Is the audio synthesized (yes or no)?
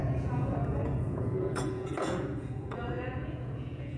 yes